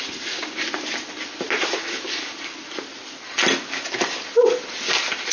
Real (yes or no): yes